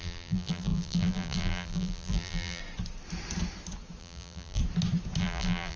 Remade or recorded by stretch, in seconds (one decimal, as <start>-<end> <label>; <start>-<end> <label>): 0.0-2.6 remade; 2.6-4.0 recorded; 4.0-4.6 remade; 4.6-5.2 recorded; 5.2-5.8 remade